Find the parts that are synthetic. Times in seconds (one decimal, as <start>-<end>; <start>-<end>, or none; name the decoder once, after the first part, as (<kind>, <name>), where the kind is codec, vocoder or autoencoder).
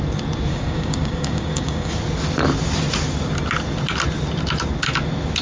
0.5-1.9 (codec, DAC)